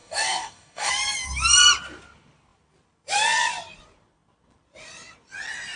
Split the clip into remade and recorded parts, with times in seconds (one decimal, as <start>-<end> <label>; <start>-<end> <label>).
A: 0.0-0.9 remade; 0.9-5.8 recorded